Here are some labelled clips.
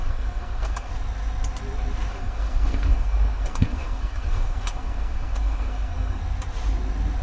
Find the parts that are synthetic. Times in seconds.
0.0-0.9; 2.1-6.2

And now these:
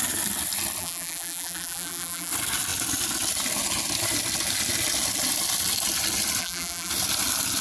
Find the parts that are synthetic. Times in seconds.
0.8-2.3; 6.4-6.9

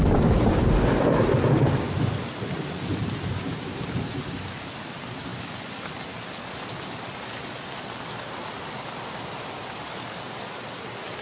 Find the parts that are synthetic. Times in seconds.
none

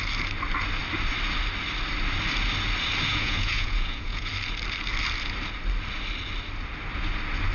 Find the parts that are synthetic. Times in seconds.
3.1-4.3

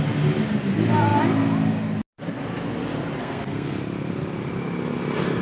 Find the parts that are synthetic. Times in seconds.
3.2-3.7

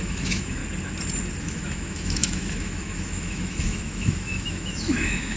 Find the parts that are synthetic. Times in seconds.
0.0-0.6; 1.4-5.4

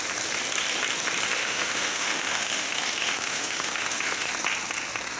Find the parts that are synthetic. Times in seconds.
1.4-4.3

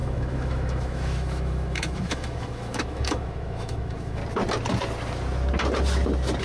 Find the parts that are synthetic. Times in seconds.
0.0-4.2